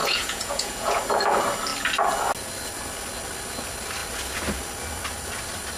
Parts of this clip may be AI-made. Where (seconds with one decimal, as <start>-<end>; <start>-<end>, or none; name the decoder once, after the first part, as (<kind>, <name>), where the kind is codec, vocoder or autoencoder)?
0.0-1.0 (vocoder, Vocos)